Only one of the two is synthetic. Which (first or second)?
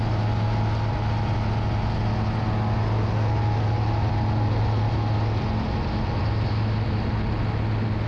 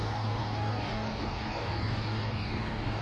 second